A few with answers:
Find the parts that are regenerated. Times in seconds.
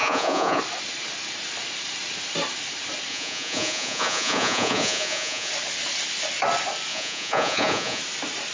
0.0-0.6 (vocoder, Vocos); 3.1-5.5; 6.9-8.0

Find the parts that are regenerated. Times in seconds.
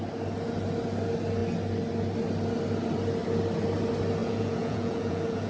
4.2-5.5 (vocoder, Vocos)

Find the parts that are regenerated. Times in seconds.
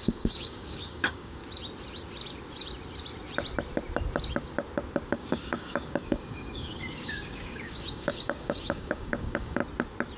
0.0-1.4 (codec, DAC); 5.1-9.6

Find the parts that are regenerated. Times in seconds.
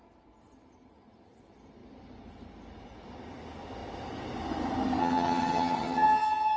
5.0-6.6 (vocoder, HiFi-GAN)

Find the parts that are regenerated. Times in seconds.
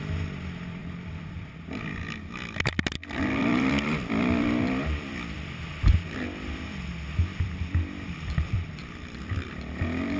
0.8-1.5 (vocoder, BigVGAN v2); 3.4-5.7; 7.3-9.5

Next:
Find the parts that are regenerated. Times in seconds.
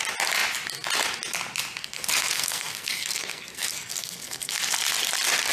1.8-4.6 (codec, SNAC)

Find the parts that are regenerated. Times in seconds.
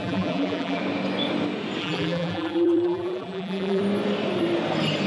0.0-0.8 (vocoder, BigVGAN v2); 1.8-3.8